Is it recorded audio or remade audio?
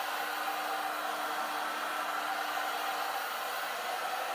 recorded